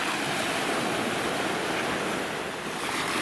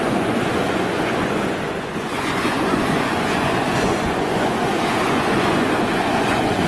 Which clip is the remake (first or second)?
second